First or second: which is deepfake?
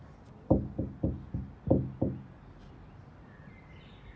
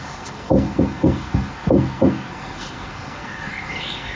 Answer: second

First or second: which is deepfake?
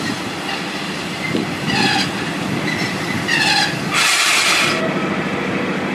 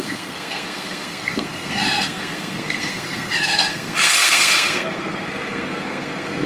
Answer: second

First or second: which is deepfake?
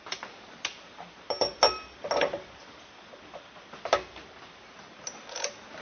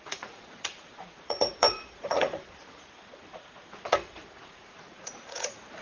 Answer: second